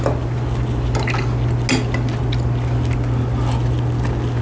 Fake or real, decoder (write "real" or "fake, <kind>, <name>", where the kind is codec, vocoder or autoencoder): real